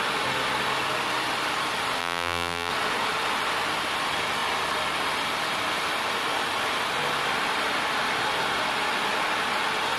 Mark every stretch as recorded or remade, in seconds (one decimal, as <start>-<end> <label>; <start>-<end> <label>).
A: 0.0-2.0 recorded; 2.0-2.7 remade; 2.7-10.0 recorded